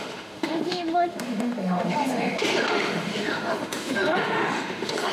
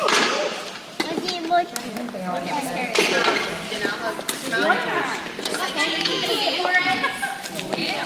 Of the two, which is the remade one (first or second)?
first